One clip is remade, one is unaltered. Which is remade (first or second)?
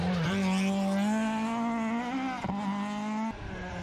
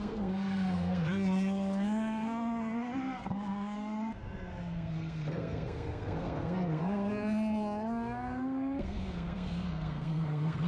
second